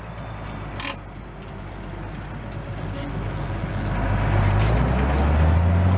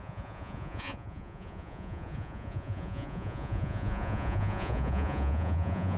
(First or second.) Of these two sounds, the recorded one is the first